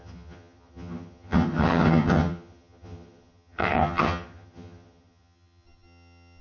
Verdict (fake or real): fake